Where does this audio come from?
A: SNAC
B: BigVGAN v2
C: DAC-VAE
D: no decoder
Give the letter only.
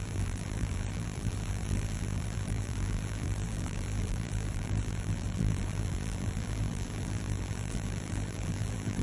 B